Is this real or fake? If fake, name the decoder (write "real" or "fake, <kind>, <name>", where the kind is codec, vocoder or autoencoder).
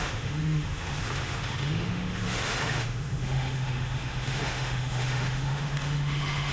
fake, autoencoder, DAC-VAE